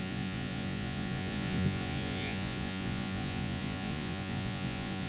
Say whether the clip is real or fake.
fake